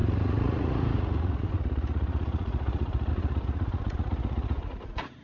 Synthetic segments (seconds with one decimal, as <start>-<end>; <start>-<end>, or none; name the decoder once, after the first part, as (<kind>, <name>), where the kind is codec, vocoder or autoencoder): 0.0-5.2 (vocoder, Vocos)